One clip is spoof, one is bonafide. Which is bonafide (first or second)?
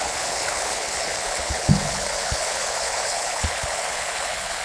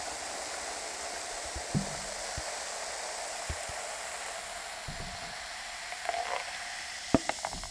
second